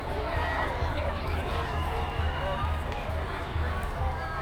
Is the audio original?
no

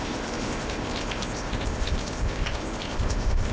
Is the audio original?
no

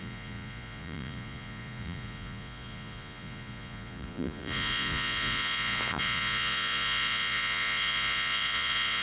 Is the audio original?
no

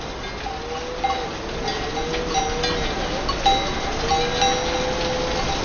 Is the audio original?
yes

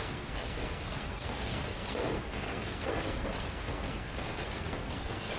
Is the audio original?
no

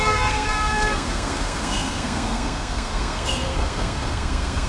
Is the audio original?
no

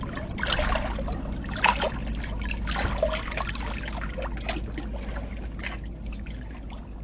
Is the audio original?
yes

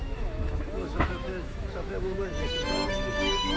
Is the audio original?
no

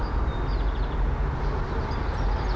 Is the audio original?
yes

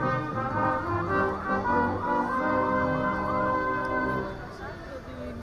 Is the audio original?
yes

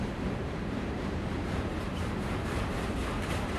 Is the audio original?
no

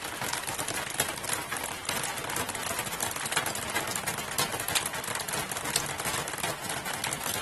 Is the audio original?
yes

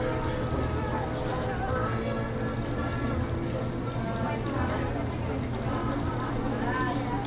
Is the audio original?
yes